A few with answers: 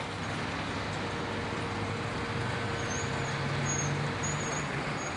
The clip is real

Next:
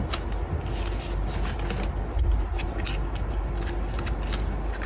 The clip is real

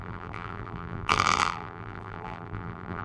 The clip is fake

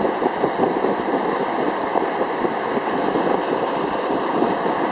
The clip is real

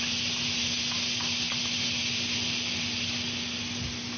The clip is real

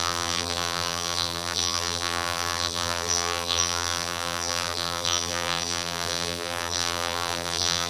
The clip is fake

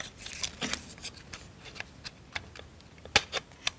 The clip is real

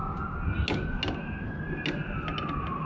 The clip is real